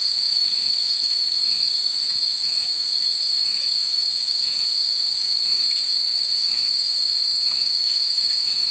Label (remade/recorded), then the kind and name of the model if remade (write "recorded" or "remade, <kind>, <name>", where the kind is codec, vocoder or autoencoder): remade, autoencoder, DAC-VAE